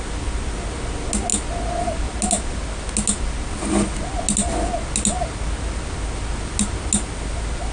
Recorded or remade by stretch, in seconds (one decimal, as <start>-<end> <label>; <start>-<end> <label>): 0.0-7.7 recorded